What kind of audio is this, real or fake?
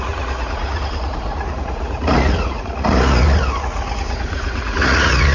fake